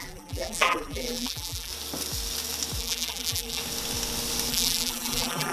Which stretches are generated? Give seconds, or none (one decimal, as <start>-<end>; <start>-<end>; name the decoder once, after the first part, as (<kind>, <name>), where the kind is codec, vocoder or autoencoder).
0.0-1.7 (vocoder, BigVGAN v2); 2.8-3.6; 4.5-5.5